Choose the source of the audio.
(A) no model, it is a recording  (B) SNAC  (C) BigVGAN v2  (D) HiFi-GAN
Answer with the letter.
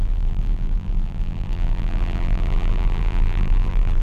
C